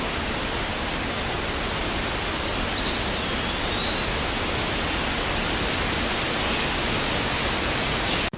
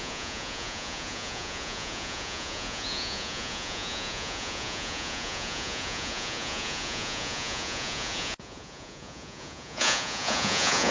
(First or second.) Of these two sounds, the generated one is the second